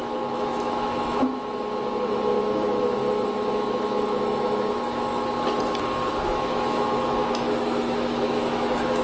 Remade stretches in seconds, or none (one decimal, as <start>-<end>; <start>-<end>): 0.0-1.3; 2.1-5.1; 6.1-9.0